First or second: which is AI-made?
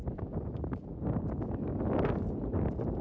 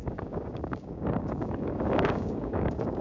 second